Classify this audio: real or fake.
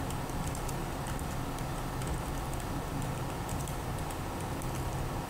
real